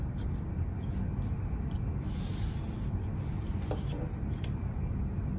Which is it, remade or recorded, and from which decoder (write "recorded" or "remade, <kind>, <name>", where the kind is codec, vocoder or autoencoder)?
recorded